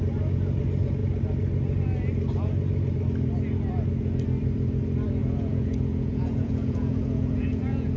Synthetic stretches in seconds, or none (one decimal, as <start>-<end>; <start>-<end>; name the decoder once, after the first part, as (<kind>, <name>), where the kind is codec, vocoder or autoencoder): 5.2-8.0 (vocoder, Vocos)